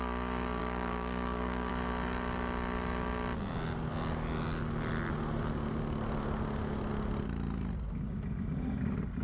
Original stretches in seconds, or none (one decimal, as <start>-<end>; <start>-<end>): 0.0-0.6; 1.7-9.2